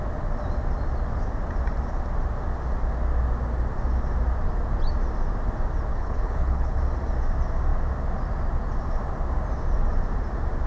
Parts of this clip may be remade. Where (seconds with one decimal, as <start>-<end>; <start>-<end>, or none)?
5.9-6.8